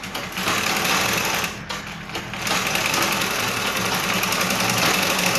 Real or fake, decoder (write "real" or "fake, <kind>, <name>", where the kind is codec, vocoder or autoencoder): real